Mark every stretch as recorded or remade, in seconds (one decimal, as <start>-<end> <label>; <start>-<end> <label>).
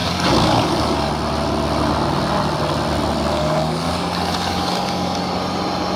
0.0-1.1 remade; 1.1-3.3 recorded; 3.3-5.3 remade; 5.3-6.0 recorded